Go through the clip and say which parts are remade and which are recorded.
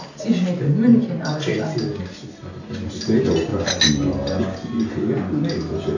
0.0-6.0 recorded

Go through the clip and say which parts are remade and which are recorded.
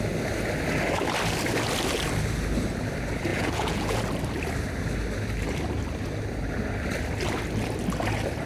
0.0-3.3 recorded; 3.3-4.0 remade; 4.0-8.5 recorded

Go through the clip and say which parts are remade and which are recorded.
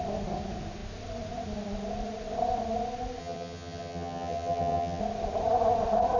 0.0-3.2 recorded; 3.2-5.0 remade; 5.0-6.2 recorded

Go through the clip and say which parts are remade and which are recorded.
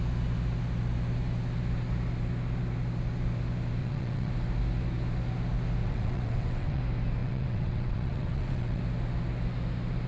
0.0-3.8 recorded; 3.8-4.3 remade; 4.3-5.8 recorded; 5.8-6.8 remade; 6.8-7.2 recorded; 7.2-8.8 remade; 8.8-10.1 recorded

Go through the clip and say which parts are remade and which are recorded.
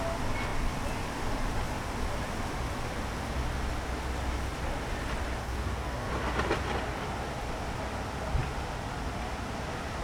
0.0-5.4 recorded; 5.4-6.1 remade; 6.1-10.0 recorded